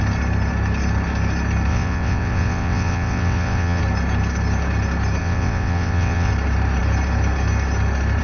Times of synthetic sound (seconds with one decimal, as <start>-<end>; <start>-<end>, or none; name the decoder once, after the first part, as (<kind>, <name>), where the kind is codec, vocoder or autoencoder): 1.7-3.8 (vocoder, WaveNeXt); 5.2-6.3